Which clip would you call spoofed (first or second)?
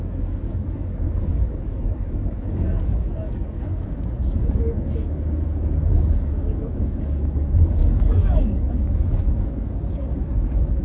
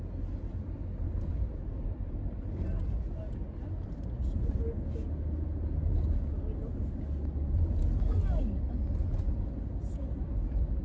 first